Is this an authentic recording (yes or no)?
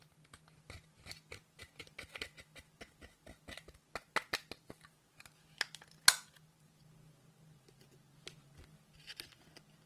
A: yes